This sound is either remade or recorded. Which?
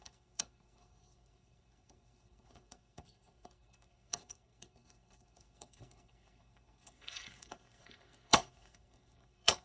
remade